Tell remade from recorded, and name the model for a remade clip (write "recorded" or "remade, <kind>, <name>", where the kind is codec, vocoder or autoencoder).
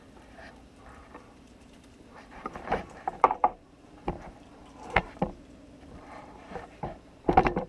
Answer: remade, vocoder, BigVGAN v2